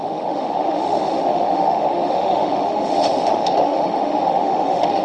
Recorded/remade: remade